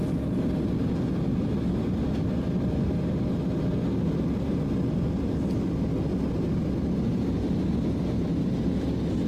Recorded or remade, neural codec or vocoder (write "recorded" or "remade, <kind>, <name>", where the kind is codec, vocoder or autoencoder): recorded